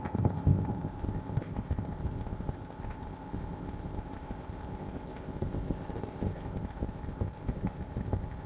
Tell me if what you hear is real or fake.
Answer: fake